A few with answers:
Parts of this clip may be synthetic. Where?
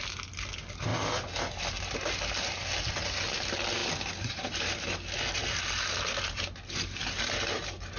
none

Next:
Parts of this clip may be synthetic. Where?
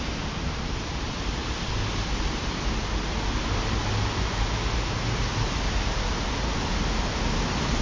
none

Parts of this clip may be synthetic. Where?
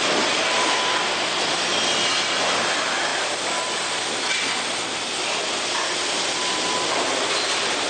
3.1-4.4 (vocoder, BigVGAN v2)